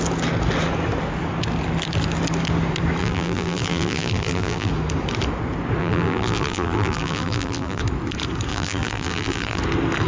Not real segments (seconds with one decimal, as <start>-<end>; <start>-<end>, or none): 3.0-4.7; 5.8-7.8; 8.5-9.6